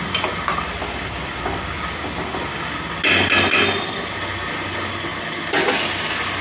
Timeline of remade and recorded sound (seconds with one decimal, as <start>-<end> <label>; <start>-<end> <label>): 0.0-6.4 recorded